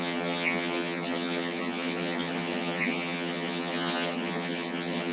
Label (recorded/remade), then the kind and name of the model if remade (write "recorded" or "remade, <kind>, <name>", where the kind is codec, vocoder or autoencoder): remade, vocoder, HiFi-GAN